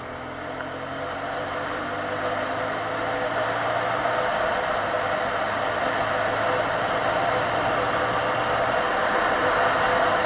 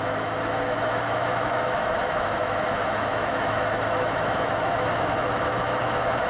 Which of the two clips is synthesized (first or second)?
second